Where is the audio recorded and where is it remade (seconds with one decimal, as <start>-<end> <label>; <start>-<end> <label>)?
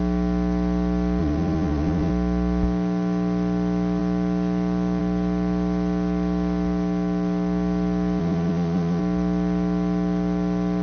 0.0-1.2 recorded; 1.2-2.1 remade; 2.1-8.2 recorded; 8.2-9.0 remade; 9.0-10.8 recorded